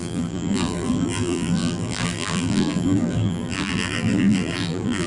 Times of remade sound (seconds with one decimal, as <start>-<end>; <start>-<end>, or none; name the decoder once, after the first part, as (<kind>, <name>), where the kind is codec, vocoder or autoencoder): 0.0-5.1 (vocoder, BigVGAN v2)